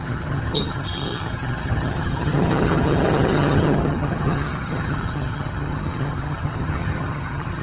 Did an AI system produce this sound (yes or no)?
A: yes